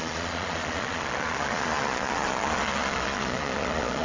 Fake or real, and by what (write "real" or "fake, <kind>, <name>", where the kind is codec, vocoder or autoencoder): fake, vocoder, Vocos